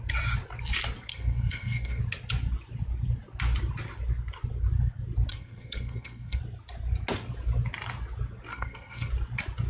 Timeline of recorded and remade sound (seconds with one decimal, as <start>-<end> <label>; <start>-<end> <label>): 0.0-1.1 recorded; 1.1-2.0 remade; 2.0-5.3 recorded; 5.3-6.4 remade; 6.4-8.5 recorded; 8.5-9.1 remade; 9.1-9.7 recorded